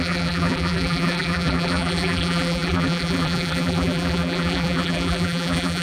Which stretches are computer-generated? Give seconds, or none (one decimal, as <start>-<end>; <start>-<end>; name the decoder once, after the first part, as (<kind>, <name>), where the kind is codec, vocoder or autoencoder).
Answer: 0.0-5.8 (vocoder, BigVGAN v2)